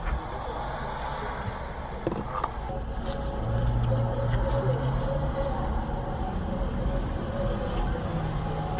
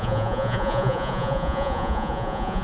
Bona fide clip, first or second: first